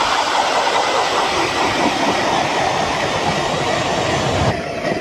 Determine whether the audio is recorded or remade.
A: recorded